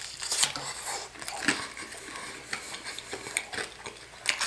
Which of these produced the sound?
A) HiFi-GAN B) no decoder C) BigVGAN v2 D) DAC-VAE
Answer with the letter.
B